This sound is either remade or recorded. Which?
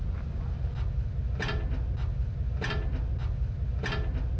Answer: recorded